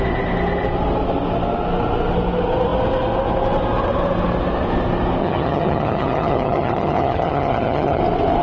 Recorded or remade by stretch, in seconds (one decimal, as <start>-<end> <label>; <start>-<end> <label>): 0.0-5.2 recorded; 5.2-8.0 remade; 8.0-8.4 recorded

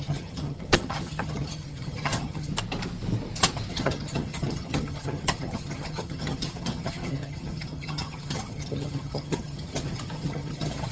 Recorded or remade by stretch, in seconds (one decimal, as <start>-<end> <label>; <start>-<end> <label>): 0.0-2.5 remade; 2.5-3.7 recorded; 3.7-10.9 remade